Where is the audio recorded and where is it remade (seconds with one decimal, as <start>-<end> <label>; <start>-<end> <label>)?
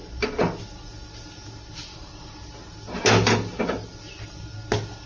0.0-5.1 recorded